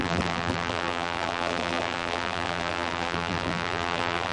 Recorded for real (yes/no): no